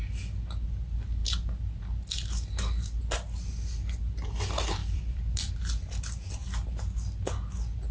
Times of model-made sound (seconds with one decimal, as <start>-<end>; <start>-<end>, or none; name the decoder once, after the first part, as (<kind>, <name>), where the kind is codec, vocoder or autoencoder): 4.8-5.5 (vocoder, BigVGAN v2)